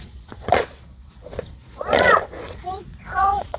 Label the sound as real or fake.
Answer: fake